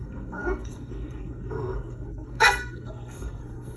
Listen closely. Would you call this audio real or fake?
fake